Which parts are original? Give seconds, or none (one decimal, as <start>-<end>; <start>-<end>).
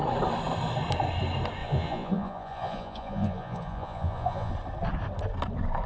0.0-1.6; 4.5-5.9